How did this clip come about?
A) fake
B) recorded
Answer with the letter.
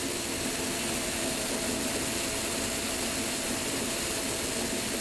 B